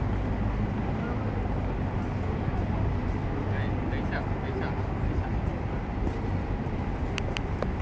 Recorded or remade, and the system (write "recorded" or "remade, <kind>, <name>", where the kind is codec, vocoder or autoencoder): recorded